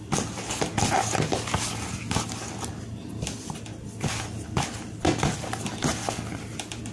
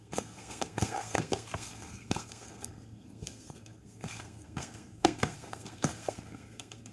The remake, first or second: second